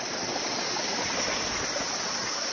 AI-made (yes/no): no